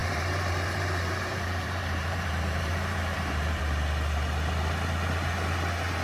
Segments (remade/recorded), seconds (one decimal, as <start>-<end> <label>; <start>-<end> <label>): 0.0-3.6 remade; 3.6-6.0 recorded